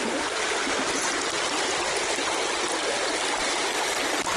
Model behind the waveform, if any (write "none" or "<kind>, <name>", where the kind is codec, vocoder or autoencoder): none